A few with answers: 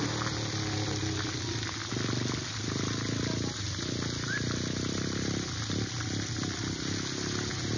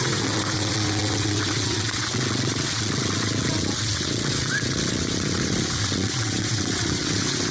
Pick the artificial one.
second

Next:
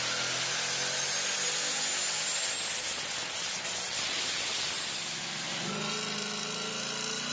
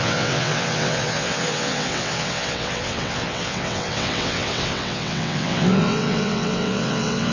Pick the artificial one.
second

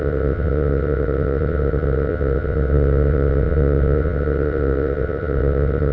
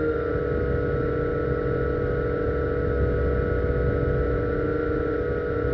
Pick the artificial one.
first